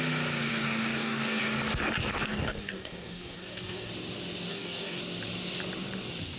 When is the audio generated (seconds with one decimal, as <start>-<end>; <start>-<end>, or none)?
0.5-1.4; 2.3-3.9; 4.5-5.0